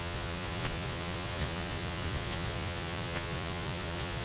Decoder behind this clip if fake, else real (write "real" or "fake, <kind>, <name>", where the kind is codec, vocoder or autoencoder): fake, vocoder, Vocos